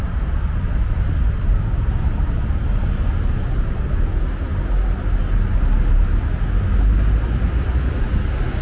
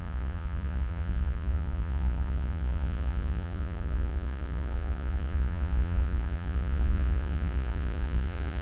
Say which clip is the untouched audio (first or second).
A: first